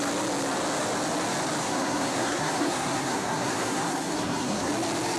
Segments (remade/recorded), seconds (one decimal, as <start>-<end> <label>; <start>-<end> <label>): 0.0-1.6 recorded; 1.6-4.7 remade; 4.7-5.2 recorded